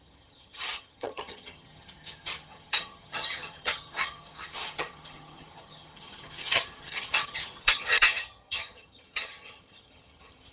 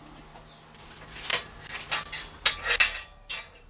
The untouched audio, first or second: second